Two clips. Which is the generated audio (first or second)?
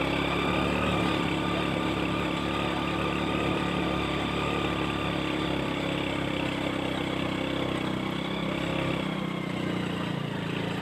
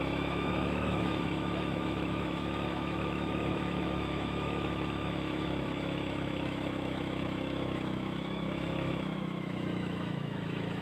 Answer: second